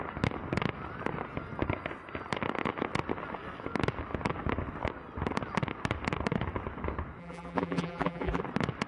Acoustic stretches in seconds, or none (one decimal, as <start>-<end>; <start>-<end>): 0.0-7.2; 8.4-8.9